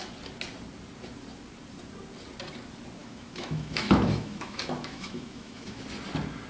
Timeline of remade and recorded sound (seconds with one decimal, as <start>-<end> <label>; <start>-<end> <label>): 0.0-3.0 recorded; 3.0-5.8 remade; 5.8-6.5 recorded